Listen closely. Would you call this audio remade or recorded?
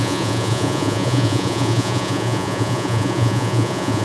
remade